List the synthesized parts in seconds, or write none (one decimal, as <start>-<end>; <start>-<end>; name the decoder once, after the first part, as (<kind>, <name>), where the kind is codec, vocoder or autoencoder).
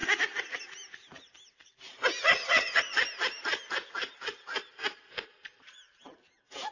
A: 2.3-3.0 (vocoder, HiFi-GAN)